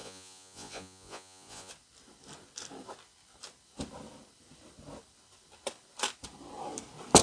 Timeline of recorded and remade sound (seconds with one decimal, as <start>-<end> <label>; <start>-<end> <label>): 0.0-1.7 remade; 1.7-7.2 recorded